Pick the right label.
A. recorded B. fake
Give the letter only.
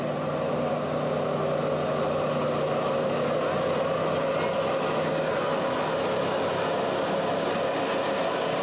A